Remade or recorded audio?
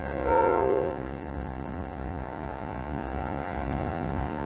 remade